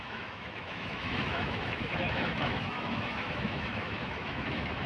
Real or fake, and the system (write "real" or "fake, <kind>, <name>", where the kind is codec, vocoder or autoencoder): fake, autoencoder, DAC-VAE